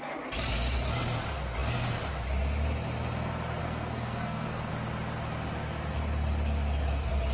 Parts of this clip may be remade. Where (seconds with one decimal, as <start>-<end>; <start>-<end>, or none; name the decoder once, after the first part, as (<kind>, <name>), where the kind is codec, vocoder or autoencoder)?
3.6-4.7 (codec, SNAC)